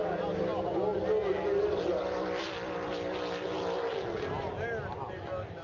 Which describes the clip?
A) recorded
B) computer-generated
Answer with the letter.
A